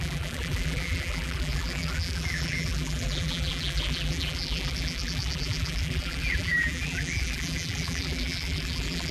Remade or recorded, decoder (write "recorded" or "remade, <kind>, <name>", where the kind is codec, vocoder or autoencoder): remade, vocoder, BigVGAN v2